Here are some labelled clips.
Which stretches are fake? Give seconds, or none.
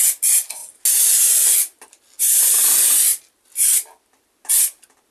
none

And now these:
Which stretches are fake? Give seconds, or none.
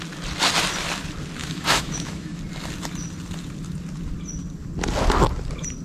1.4-2.4 (autoencoder, DAC-VAE)